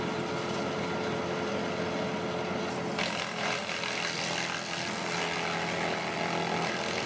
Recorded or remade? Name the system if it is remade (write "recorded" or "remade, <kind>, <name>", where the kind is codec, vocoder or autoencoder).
recorded